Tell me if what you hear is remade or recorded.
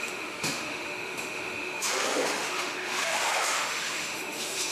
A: remade